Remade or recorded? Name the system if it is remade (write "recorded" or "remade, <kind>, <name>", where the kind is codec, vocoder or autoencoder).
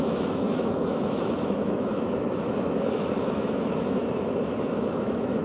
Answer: remade, autoencoder, DAC-VAE